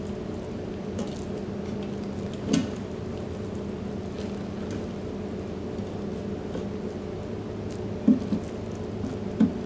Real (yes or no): yes